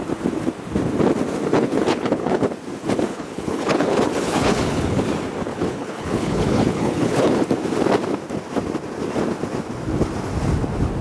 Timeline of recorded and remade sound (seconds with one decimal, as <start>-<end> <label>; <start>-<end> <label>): 0.0-1.5 recorded; 1.5-2.5 remade; 2.5-3.1 recorded; 3.1-5.0 remade; 5.0-5.5 recorded; 5.5-7.4 remade; 7.4-11.0 recorded